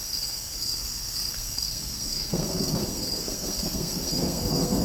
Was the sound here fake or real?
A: fake